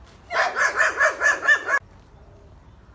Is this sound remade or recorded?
recorded